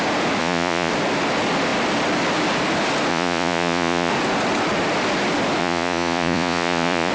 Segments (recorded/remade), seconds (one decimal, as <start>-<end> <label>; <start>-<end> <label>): 0.0-0.4 recorded; 0.4-0.9 remade; 0.9-3.1 recorded; 3.1-4.1 remade; 4.1-5.6 recorded; 5.6-7.1 remade